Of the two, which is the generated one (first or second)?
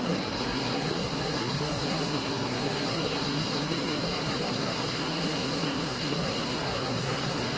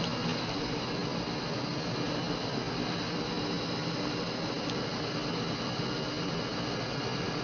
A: first